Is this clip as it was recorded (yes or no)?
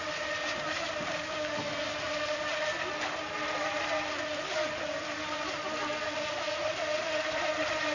yes